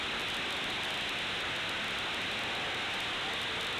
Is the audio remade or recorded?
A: recorded